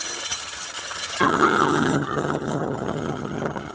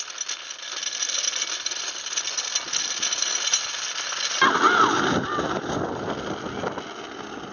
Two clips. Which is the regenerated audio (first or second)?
first